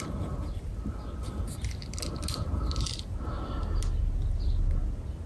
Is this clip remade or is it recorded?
recorded